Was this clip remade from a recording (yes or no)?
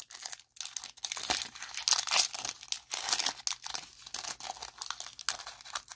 no